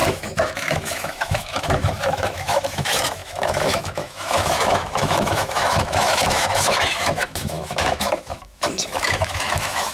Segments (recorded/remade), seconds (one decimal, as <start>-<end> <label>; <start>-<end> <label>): 0.0-9.9 remade